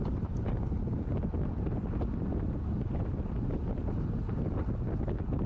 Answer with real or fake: real